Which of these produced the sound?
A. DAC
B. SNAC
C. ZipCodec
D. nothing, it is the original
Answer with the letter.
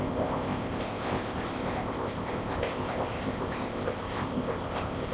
C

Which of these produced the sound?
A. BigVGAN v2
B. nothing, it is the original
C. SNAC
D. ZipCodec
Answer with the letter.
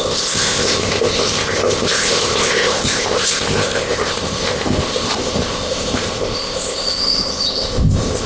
D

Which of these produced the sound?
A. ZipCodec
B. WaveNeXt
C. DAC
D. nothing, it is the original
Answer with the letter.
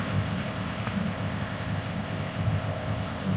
A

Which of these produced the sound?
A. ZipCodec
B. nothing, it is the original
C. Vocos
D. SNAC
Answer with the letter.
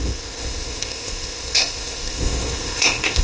A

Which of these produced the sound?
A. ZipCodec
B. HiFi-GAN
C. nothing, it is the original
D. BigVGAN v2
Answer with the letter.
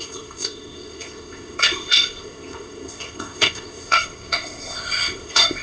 A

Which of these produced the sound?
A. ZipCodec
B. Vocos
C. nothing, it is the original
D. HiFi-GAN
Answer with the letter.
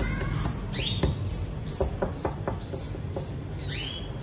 C